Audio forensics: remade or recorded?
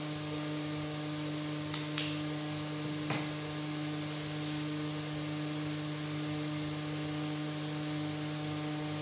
recorded